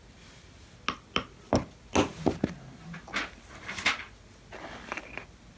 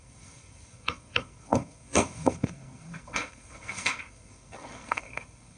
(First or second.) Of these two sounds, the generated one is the second